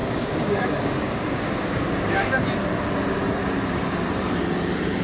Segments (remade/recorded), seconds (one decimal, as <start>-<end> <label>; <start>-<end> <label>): 0.0-2.4 remade; 2.4-5.0 recorded